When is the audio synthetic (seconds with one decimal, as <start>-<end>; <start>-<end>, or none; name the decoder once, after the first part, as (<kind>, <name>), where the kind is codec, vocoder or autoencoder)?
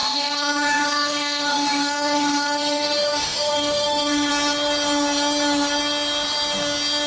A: 0.0-4.3 (autoencoder, DAC-VAE)